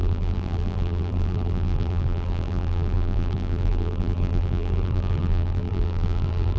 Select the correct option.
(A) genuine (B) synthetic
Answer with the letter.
B